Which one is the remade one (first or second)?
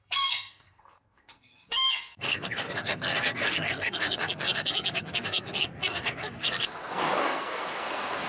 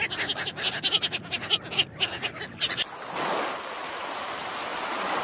first